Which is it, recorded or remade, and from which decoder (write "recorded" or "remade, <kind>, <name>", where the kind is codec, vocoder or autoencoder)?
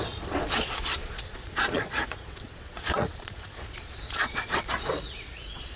remade, vocoder, Vocos